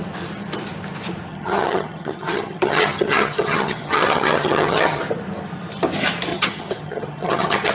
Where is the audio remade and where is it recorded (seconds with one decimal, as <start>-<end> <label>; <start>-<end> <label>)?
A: 0.0-1.3 recorded; 1.3-5.0 remade; 5.0-6.3 recorded; 6.3-7.7 remade